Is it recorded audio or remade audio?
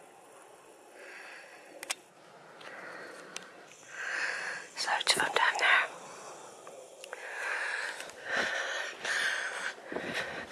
recorded